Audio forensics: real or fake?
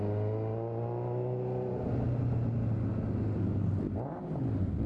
real